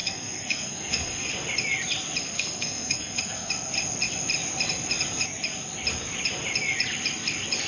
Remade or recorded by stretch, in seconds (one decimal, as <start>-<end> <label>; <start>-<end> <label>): 0.0-1.3 remade; 1.3-2.2 recorded; 2.2-3.5 remade; 3.5-7.7 recorded